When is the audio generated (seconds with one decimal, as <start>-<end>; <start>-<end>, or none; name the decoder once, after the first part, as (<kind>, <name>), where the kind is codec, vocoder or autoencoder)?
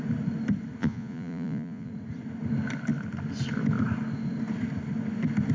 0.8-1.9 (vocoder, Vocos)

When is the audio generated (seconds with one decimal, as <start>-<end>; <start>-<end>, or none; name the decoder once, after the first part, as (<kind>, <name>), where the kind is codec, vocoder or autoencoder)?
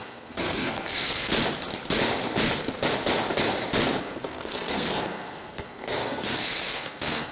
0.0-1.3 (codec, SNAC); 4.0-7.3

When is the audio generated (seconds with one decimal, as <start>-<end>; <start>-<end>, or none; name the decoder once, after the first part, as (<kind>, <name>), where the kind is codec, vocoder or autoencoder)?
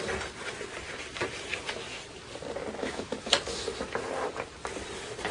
2.8-3.3 (autoencoder, DAC-VAE)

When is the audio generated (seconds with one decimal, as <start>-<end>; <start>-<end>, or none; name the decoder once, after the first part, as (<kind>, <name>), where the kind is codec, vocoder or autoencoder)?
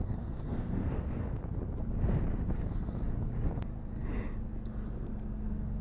0.0-1.4 (codec, SNAC); 4.9-5.8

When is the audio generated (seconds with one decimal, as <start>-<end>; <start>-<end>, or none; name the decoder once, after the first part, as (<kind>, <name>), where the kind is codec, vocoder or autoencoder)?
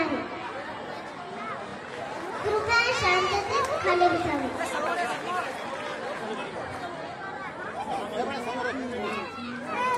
none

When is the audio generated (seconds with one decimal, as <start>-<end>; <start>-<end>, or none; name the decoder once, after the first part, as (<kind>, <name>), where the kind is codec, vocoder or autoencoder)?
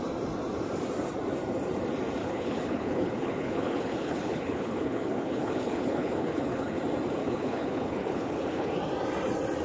2.2-6.8 (codec, HILCodec); 7.2-8.7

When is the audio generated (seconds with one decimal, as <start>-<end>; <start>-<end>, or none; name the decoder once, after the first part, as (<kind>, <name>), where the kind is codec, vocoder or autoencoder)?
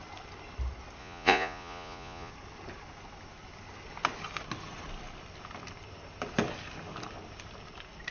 1.0-2.3 (vocoder, Vocos)